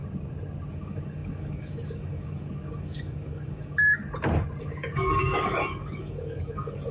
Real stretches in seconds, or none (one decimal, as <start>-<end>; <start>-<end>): 0.0-0.7; 4.0-4.6